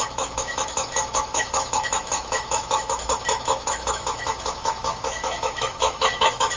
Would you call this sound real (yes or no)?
no